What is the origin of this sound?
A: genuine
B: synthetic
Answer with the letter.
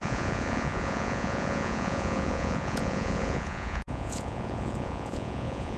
B